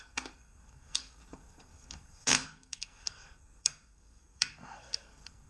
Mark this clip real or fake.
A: fake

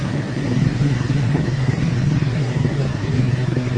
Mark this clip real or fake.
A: fake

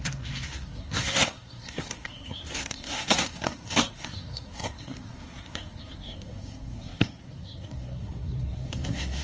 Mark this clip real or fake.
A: fake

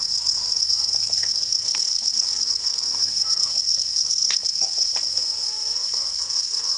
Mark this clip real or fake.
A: fake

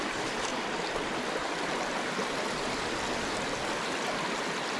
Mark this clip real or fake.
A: real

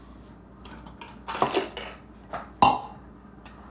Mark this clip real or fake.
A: real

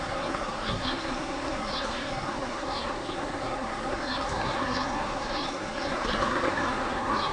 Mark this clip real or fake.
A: fake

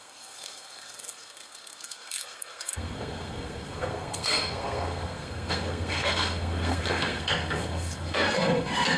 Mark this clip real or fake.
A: fake